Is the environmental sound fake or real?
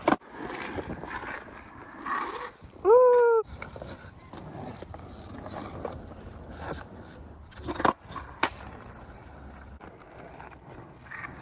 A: real